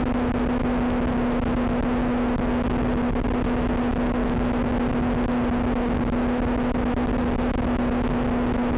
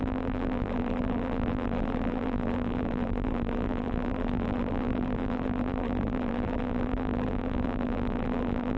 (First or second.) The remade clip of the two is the second